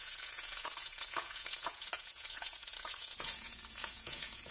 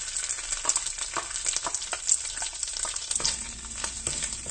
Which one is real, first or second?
second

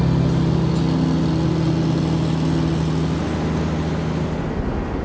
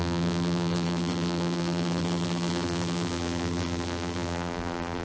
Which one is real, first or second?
first